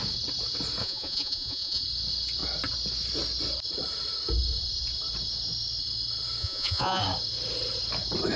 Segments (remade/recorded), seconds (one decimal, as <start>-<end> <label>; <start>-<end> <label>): 0.0-0.8 recorded; 0.8-1.8 remade; 1.8-6.4 recorded; 6.4-7.0 remade; 7.0-8.4 recorded

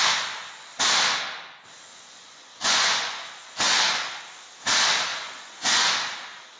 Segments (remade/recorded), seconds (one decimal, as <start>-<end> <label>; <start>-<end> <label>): 0.0-1.9 recorded; 1.9-4.2 remade; 4.2-5.1 recorded; 5.1-5.9 remade; 5.9-6.6 recorded

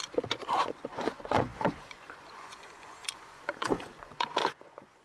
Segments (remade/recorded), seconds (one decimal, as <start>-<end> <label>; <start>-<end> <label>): 0.0-5.0 remade

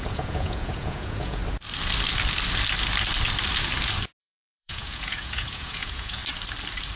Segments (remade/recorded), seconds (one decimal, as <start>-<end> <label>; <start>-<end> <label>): 0.0-1.4 remade; 1.4-4.2 recorded; 4.2-6.2 remade; 6.2-7.0 recorded

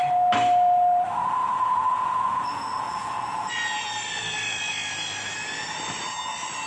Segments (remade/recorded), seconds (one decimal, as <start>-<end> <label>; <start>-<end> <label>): 0.0-1.4 recorded; 1.4-3.9 remade; 3.9-6.7 recorded

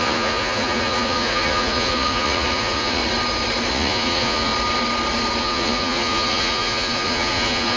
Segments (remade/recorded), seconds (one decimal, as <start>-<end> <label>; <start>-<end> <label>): 0.0-3.0 remade; 3.0-3.7 recorded; 3.7-4.5 remade; 4.5-5.4 recorded; 5.4-7.8 remade